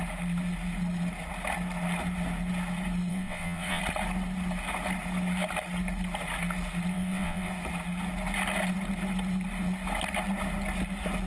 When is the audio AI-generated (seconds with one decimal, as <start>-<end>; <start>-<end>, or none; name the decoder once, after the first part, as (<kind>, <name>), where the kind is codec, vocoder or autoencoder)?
3.1-3.8 (vocoder, WaveNeXt); 6.9-7.5